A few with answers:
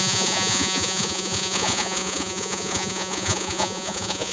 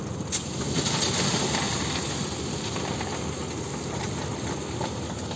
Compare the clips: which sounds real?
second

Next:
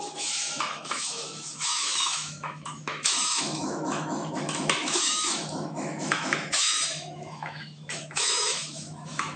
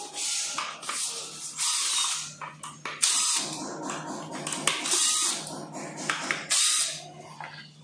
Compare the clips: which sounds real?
second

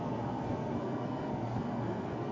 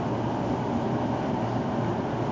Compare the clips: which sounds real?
second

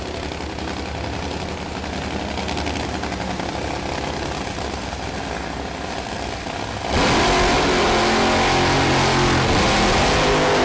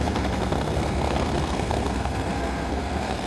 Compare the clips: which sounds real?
first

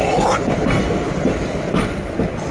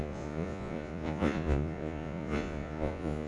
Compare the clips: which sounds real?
first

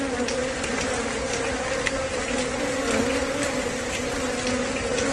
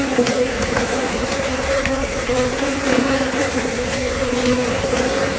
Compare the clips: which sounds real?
first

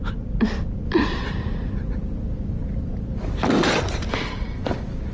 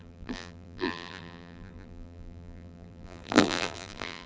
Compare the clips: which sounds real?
first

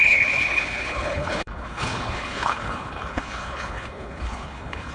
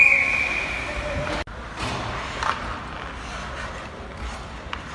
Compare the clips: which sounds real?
second